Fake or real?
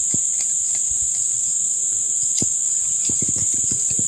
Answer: real